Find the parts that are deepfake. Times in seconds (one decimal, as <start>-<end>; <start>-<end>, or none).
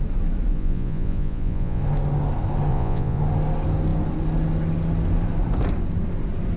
0.5-1.8; 2.7-3.2